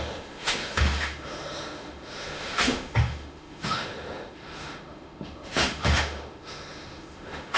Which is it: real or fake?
fake